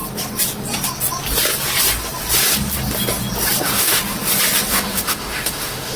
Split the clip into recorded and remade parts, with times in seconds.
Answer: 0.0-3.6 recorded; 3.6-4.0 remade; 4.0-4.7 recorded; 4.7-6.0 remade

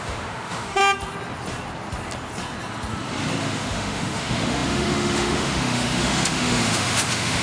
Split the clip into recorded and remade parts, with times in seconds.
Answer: 0.0-0.8 remade; 0.8-3.4 recorded; 3.4-7.4 remade

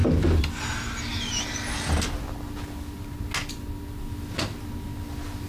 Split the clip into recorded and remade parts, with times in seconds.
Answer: 0.0-5.5 recorded

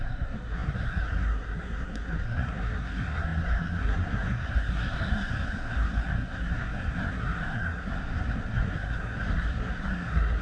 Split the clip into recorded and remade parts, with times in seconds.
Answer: 0.0-10.4 remade

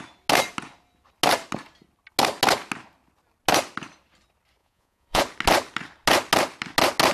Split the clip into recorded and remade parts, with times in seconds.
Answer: 0.0-4.6 recorded; 4.6-5.2 remade; 5.2-7.1 recorded

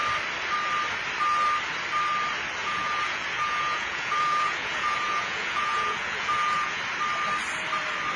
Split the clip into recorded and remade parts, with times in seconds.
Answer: 0.0-2.6 recorded; 2.6-6.8 remade; 6.8-8.2 recorded

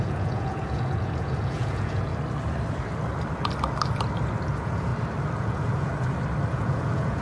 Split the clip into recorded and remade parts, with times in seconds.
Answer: 0.0-2.1 remade; 2.1-4.5 recorded; 4.5-4.9 remade; 4.9-5.4 recorded; 5.4-5.9 remade; 5.9-6.5 recorded; 6.5-7.2 remade